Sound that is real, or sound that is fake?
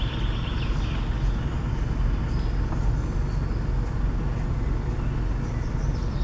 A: real